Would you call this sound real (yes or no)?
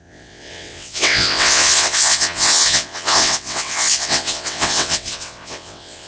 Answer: no